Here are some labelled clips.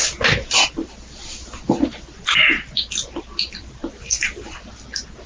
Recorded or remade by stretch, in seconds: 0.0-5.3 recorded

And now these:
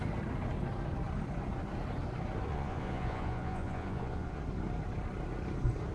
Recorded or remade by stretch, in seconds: 0.0-2.5 recorded; 2.5-4.4 remade; 4.4-5.9 recorded

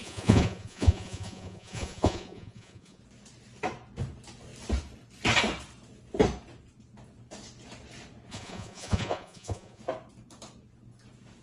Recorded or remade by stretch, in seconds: 0.0-3.0 remade; 3.0-8.3 recorded; 8.3-9.8 remade; 9.8-11.4 recorded

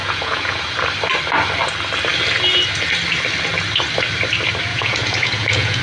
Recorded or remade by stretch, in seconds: 0.0-0.6 remade; 0.6-4.7 recorded; 4.7-5.8 remade

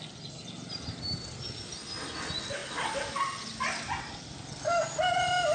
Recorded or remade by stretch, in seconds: 0.0-5.5 recorded